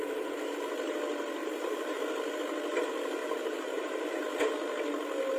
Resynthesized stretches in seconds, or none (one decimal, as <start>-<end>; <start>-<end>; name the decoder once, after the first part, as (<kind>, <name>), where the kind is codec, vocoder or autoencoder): 1.4-2.0 (vocoder, BigVGAN v2); 3.2-4.5